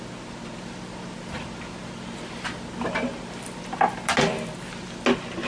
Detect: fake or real real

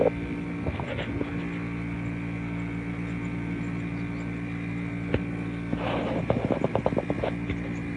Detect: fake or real real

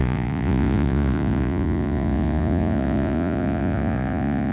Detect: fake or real fake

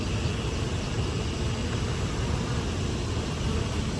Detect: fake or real real